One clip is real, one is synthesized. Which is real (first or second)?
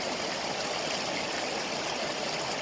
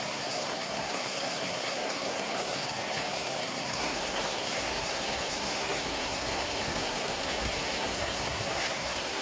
first